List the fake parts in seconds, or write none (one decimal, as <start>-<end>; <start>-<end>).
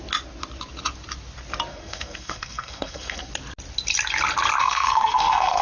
1.7-3.3; 4.6-5.6